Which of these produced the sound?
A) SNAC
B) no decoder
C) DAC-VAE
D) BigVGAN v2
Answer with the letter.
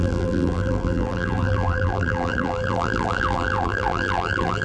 D